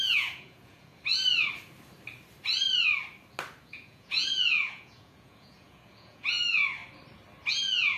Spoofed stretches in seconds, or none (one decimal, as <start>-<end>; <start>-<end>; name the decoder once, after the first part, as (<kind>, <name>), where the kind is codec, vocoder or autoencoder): 0.0-0.9 (vocoder, Vocos); 3.6-6.8; 7.5-8.0